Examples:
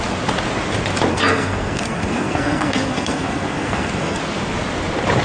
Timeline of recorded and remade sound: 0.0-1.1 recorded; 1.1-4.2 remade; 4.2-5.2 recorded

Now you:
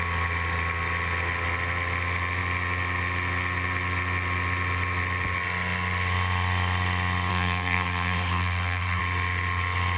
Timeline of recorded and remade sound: 0.0-7.3 recorded; 7.3-9.0 remade; 9.0-10.0 recorded